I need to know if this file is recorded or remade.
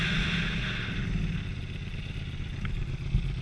recorded